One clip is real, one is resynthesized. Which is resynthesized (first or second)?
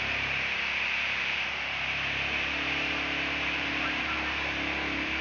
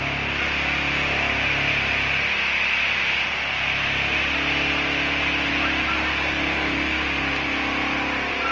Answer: first